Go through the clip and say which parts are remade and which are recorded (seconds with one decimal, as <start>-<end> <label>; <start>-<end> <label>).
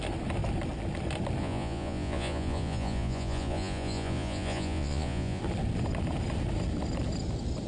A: 0.0-1.4 recorded; 1.4-5.4 remade; 5.4-7.7 recorded